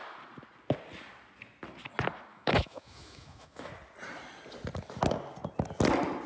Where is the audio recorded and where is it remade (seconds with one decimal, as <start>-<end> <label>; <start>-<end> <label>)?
0.0-2.3 recorded; 2.3-3.7 remade; 3.7-6.3 recorded